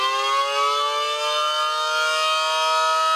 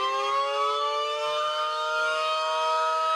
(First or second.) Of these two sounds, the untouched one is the first